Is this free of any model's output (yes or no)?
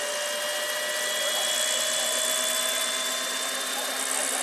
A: yes